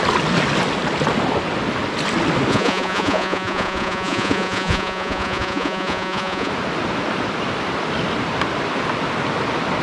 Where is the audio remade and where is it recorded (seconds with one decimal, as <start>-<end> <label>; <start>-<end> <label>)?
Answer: 0.0-2.5 recorded; 2.5-6.5 remade; 6.5-9.8 recorded